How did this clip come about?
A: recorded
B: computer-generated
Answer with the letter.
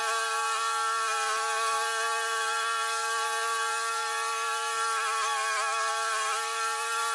A